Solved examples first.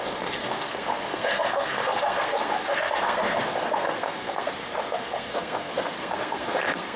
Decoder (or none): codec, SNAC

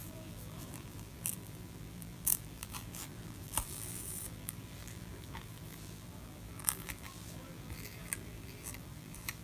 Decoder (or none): vocoder, BigVGAN v2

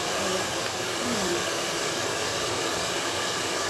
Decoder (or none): codec, DAC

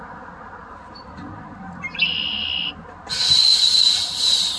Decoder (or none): none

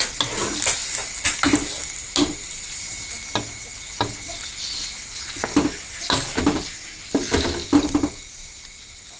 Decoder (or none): none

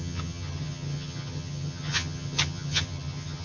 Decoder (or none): vocoder, HiFi-GAN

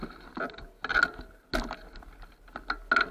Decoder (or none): none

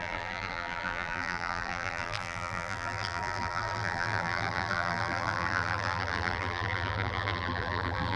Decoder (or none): vocoder, BigVGAN v2